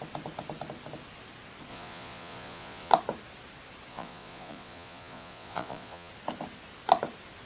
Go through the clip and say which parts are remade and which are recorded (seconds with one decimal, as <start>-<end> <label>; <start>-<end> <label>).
0.0-1.7 recorded; 1.7-2.9 remade; 2.9-3.9 recorded; 3.9-6.1 remade; 6.1-7.5 recorded